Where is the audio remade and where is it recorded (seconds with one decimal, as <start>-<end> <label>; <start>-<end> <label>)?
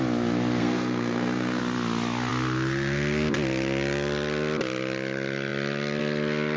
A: 0.0-0.6 recorded; 0.6-1.6 remade; 1.6-6.6 recorded